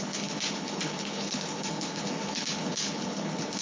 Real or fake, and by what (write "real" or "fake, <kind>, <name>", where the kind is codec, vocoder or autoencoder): fake, codec, HILCodec